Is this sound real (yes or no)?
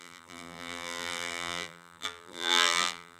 no